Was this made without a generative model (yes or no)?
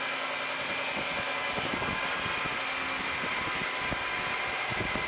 yes